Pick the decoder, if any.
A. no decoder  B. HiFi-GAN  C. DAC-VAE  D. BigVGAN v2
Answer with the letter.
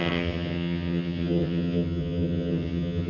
B